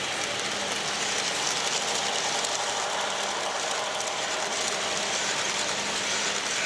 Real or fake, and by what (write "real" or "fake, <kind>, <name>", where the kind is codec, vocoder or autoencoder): real